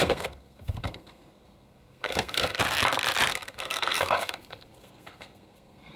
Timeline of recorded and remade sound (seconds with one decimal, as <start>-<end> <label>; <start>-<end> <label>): 0.0-2.6 remade; 2.6-3.3 recorded; 3.3-6.0 remade